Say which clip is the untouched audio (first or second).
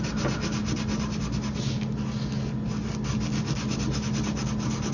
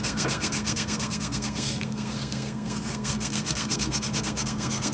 first